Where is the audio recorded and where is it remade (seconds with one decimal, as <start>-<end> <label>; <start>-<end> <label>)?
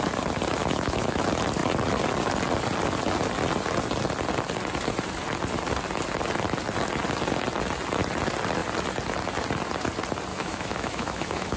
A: 0.0-0.6 recorded; 0.6-1.2 remade; 1.2-10.3 recorded; 10.3-11.6 remade